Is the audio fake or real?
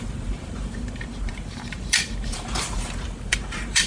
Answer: fake